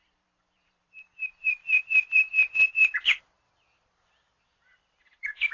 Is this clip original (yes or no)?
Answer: no